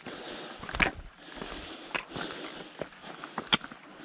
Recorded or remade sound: recorded